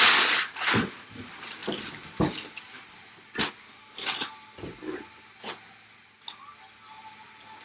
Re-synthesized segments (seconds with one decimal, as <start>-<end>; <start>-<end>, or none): none